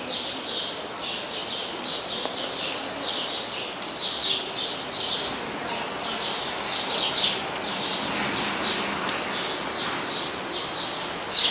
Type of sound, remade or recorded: recorded